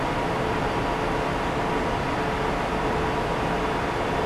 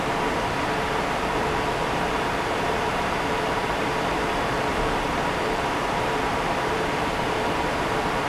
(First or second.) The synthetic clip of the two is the second